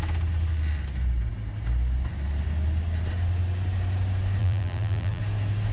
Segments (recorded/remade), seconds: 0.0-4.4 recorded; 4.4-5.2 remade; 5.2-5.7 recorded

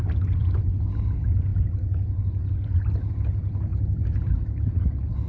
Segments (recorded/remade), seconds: 0.0-0.4 recorded; 0.4-0.9 remade; 0.9-5.3 recorded

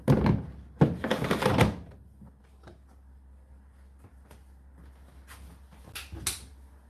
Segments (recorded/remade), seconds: 0.0-6.9 recorded